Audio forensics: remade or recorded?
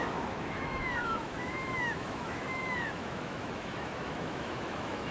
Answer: remade